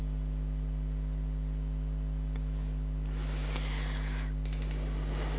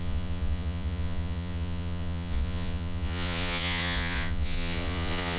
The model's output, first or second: second